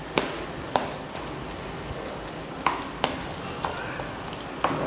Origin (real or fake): real